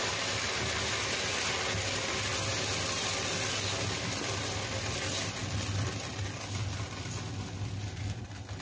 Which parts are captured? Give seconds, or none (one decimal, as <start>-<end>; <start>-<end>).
0.0-8.6